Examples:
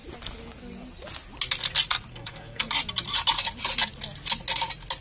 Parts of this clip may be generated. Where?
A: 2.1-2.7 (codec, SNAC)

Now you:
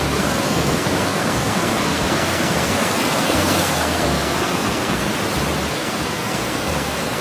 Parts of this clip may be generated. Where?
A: 0.0-5.1 (codec, SNAC); 5.7-7.2

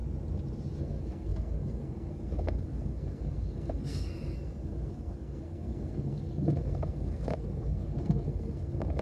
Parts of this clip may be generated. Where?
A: 0.8-9.0 (codec, SNAC)

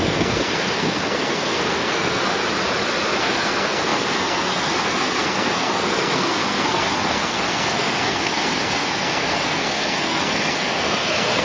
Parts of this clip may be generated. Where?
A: 0.0-2.4 (codec, SNAC); 3.2-11.4

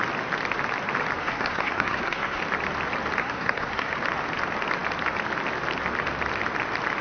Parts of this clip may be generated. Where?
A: 1.2-2.4 (codec, SNAC); 3.2-3.9

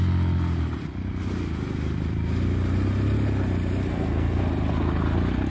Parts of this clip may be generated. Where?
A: 3.9-4.4 (codec, SNAC)

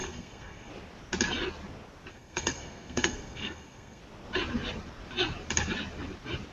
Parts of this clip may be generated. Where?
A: 0.0-0.7 (codec, SNAC); 2.1-4.0